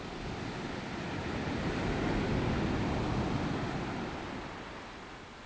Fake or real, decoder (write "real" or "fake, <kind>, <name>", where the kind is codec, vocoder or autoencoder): real